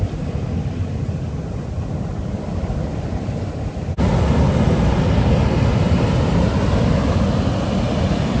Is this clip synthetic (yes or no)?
no